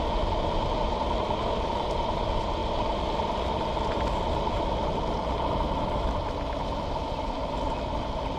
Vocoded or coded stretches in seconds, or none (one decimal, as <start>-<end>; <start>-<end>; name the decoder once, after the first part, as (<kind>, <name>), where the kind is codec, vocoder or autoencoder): none